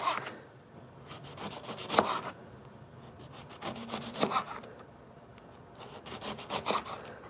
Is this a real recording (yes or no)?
yes